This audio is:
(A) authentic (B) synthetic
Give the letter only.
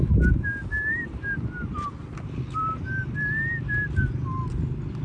A